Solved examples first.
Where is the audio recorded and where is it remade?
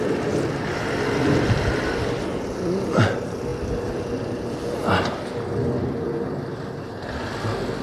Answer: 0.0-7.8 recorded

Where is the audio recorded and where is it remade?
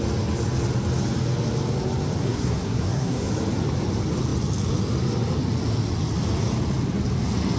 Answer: 0.0-2.2 recorded; 2.2-3.3 remade; 3.3-7.6 recorded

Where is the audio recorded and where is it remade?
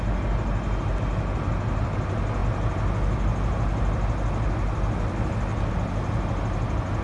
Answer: 0.0-7.0 recorded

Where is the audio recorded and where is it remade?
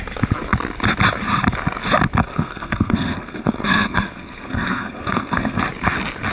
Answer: 0.0-2.2 recorded; 2.2-5.6 remade; 5.6-6.3 recorded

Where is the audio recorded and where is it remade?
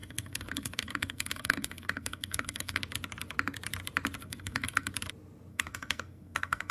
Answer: 0.0-2.8 remade; 2.8-4.2 recorded; 4.2-4.9 remade; 4.9-5.5 recorded; 5.5-6.7 remade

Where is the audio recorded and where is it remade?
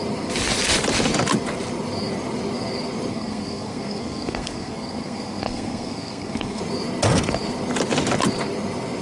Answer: 0.0-3.1 recorded; 3.1-6.6 remade; 6.6-9.0 recorded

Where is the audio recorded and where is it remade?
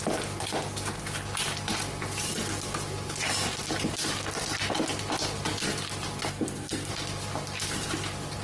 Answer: 0.0-6.3 recorded; 6.3-6.9 remade; 6.9-8.4 recorded